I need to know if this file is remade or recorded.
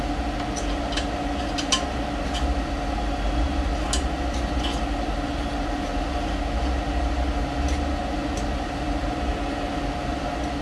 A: recorded